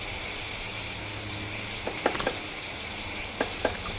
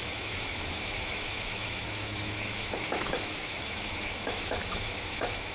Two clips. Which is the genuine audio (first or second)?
first